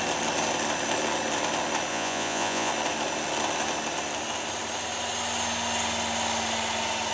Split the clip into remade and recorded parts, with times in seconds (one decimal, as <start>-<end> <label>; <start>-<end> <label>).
0.0-1.9 recorded; 1.9-2.7 remade; 2.7-7.1 recorded